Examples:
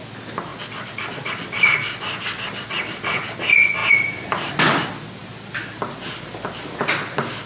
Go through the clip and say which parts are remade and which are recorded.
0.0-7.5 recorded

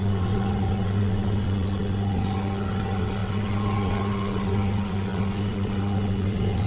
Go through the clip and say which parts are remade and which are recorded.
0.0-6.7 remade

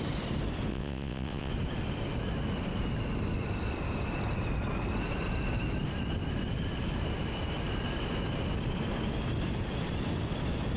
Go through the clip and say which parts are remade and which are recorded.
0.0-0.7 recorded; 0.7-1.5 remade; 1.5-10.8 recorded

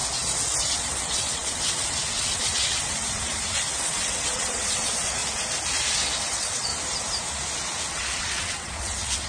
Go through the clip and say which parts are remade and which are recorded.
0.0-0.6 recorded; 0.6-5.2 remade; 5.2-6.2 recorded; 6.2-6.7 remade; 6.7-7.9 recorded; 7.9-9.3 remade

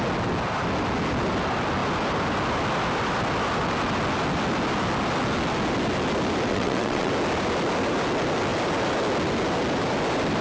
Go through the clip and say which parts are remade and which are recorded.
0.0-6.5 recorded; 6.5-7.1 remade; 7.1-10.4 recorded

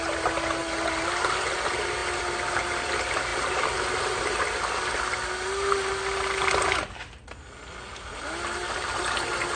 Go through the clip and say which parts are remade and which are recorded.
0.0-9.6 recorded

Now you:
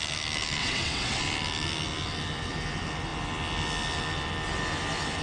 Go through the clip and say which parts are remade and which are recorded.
0.0-0.6 recorded; 0.6-1.2 remade; 1.2-5.2 recorded

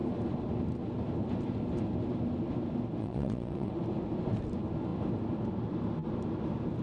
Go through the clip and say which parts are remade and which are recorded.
0.0-3.0 recorded; 3.0-3.7 remade; 3.7-6.8 recorded